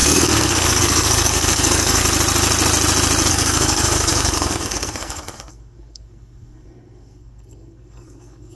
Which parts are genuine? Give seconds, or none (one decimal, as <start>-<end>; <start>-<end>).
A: 2.0-3.3